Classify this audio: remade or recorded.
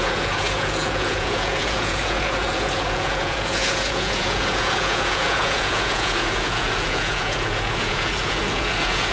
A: remade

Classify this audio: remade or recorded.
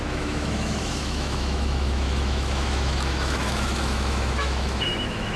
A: remade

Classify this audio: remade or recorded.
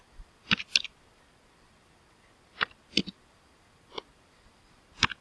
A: remade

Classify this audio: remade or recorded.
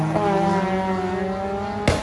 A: recorded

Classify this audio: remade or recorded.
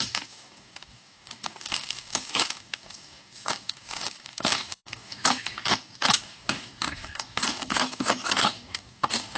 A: remade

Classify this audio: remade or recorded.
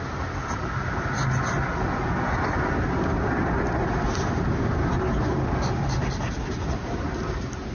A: recorded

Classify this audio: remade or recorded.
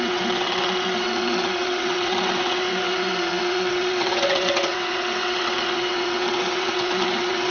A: remade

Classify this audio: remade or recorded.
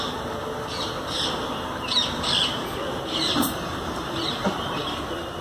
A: remade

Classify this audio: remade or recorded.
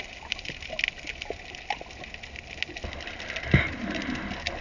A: recorded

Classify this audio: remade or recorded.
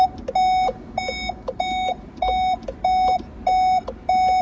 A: recorded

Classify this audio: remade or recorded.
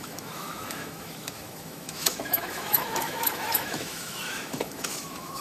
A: remade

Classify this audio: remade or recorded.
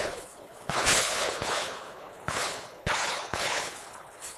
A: remade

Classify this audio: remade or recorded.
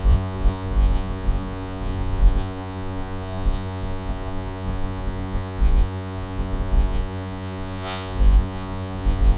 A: remade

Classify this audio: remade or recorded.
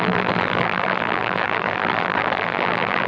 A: remade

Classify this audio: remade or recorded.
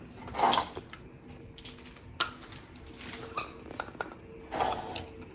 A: recorded